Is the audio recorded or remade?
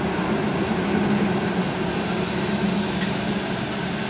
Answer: recorded